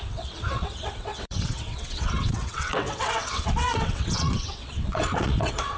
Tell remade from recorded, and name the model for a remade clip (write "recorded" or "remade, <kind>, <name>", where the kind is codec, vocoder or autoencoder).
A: remade, vocoder, WaveNeXt